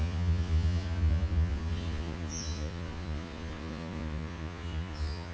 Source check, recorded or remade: remade